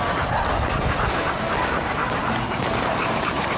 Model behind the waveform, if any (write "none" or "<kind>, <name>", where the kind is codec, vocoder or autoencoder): none